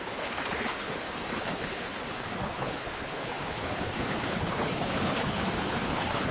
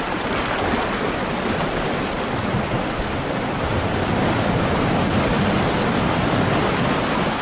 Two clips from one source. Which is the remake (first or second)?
first